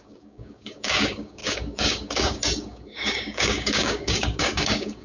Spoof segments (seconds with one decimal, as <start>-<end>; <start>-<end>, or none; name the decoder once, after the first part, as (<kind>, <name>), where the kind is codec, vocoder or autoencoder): 0.0-5.0 (codec, DAC)